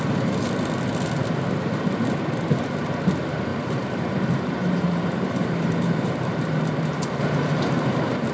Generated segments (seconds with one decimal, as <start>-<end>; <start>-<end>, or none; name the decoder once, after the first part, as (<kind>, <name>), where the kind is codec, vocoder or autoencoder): 3.5-8.3 (vocoder, BigVGAN v2)